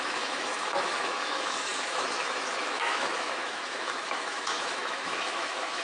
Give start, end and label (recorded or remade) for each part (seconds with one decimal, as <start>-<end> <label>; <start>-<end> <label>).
0.0-5.8 remade